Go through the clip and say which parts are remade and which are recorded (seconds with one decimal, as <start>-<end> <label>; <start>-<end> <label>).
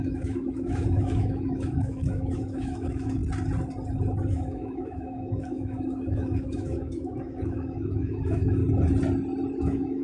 0.0-3.2 remade; 3.2-4.3 recorded; 4.3-8.6 remade; 8.6-9.6 recorded; 9.6-10.0 remade